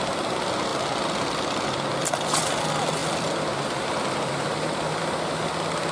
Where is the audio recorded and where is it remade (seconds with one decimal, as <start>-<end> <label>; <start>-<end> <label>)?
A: 0.0-3.0 recorded; 3.0-5.0 remade; 5.0-5.9 recorded